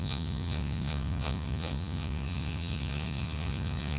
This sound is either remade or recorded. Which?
remade